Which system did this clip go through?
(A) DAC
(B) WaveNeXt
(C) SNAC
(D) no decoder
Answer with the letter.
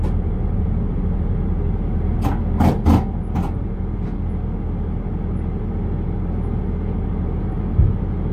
D